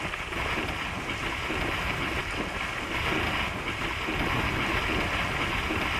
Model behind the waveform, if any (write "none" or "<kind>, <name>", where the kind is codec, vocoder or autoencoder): none